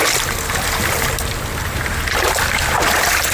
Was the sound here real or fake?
real